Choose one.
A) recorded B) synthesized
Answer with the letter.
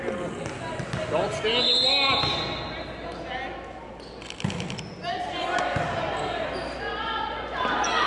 A